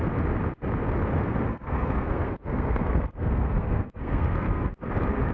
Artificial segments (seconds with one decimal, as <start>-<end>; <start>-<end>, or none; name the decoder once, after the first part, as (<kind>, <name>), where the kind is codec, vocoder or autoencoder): 1.5-4.7 (codec, SNAC)